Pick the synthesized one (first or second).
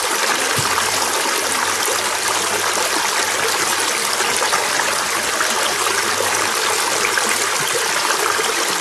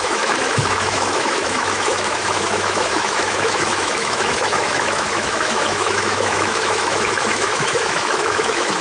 second